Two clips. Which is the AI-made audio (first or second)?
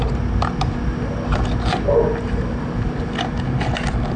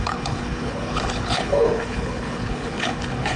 second